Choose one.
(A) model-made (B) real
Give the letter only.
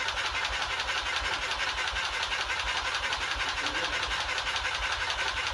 B